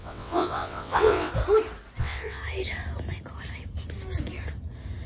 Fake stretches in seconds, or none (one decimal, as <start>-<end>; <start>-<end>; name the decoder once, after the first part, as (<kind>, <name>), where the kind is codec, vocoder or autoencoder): 0.0-1.3 (vocoder, WaveNeXt); 2.0-2.4